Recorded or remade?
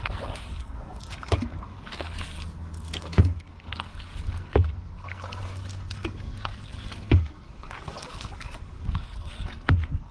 remade